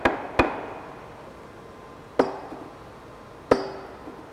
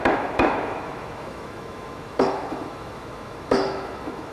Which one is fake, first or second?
second